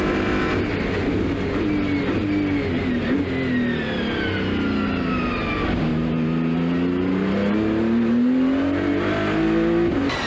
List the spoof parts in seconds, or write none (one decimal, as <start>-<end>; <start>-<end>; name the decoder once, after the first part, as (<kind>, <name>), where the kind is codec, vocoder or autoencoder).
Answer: none

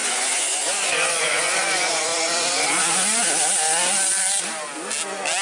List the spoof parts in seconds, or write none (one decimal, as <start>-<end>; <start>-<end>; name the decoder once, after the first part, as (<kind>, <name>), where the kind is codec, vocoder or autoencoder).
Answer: 0.0-2.1 (vocoder, Vocos)